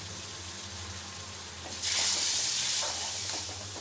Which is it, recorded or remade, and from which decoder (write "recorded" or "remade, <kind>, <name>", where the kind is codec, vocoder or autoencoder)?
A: recorded